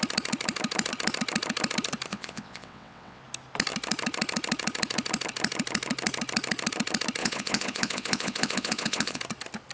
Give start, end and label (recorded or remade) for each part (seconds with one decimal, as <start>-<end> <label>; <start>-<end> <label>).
0.0-2.1 recorded; 2.1-3.2 remade; 3.2-7.2 recorded; 7.2-9.2 remade; 9.2-9.7 recorded